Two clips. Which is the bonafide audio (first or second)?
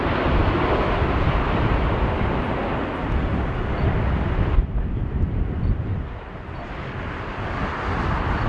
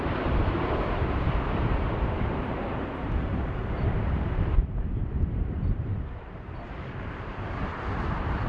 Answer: first